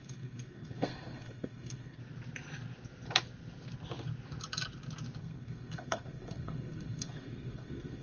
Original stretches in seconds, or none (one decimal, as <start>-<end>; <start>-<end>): 2.0-5.2